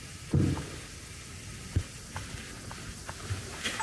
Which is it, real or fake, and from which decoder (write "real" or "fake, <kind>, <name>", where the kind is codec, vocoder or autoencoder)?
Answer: real